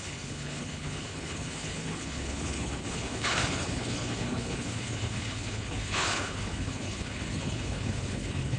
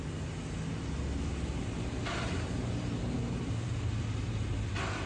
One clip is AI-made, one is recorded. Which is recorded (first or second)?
second